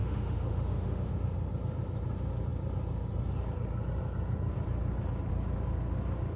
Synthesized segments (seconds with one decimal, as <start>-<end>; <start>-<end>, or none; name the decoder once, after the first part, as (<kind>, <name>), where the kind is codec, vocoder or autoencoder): 0.0-1.1 (autoencoder, DAC-VAE)